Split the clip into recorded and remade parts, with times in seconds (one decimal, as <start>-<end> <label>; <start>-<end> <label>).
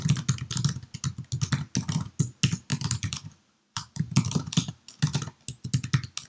0.0-2.7 recorded; 2.7-4.7 remade; 4.7-6.3 recorded